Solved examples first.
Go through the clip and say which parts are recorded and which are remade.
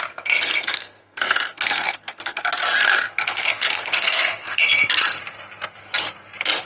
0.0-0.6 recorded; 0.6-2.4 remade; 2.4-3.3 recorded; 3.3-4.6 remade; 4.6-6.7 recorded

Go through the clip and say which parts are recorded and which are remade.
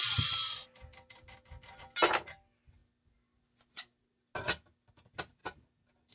0.0-6.1 recorded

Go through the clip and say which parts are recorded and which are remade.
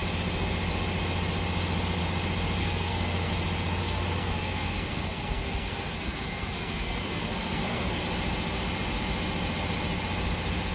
0.0-2.6 recorded; 2.6-3.3 remade; 3.3-3.8 recorded; 3.8-8.0 remade; 8.0-10.7 recorded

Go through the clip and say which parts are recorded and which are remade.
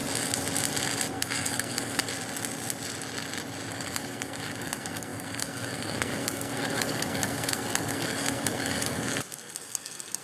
0.0-1.1 recorded; 1.1-2.1 remade; 2.1-3.7 recorded; 3.7-10.2 remade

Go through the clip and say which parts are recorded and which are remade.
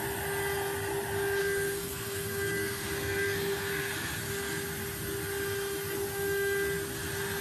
0.0-1.4 recorded; 1.4-3.9 remade; 3.9-7.4 recorded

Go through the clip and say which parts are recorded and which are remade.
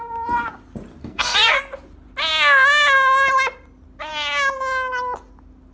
0.0-1.0 recorded; 1.0-1.6 remade; 1.6-5.7 recorded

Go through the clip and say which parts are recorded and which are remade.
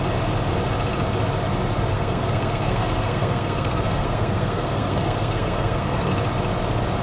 0.0-1.9 recorded; 1.9-6.1 remade; 6.1-7.0 recorded